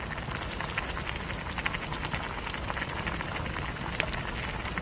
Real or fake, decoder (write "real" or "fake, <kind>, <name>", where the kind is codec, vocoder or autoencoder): real